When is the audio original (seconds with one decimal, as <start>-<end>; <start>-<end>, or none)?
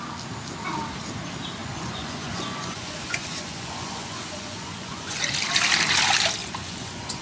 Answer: 0.0-1.6; 5.2-6.4